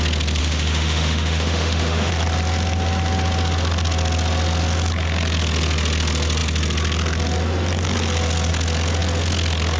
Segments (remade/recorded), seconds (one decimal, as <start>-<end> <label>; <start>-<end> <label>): 0.0-0.4 recorded; 0.4-2.1 remade; 2.1-9.8 recorded

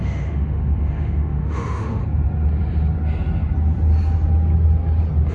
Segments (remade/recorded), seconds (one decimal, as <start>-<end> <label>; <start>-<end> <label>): 0.0-2.0 remade; 2.0-5.3 recorded

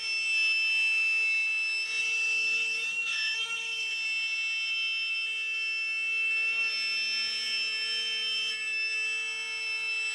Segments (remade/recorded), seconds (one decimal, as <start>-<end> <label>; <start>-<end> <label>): 0.0-2.0 recorded; 2.0-3.9 remade; 3.9-10.1 recorded

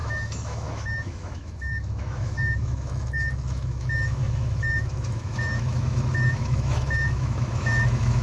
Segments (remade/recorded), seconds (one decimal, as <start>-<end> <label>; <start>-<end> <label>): 0.0-8.2 remade

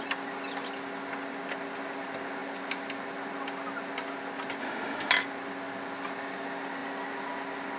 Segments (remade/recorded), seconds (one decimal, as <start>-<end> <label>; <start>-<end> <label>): 0.0-4.6 recorded; 4.6-5.1 remade; 5.1-7.8 recorded